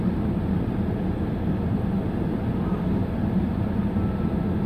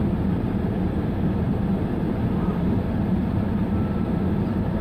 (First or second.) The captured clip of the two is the first